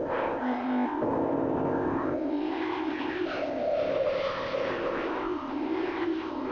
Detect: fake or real fake